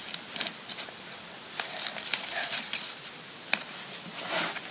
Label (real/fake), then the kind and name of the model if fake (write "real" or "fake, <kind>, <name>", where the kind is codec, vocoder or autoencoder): real